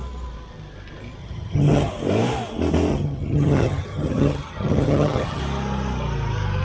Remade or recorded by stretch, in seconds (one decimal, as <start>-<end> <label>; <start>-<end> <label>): 0.0-1.2 recorded; 1.2-1.9 remade; 1.9-2.9 recorded; 2.9-5.4 remade; 5.4-6.6 recorded